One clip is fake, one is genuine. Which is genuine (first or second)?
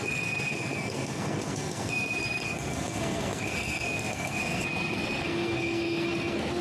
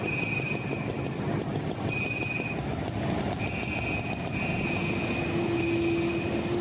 second